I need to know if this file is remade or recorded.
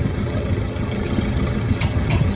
remade